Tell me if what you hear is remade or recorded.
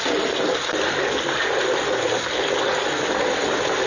recorded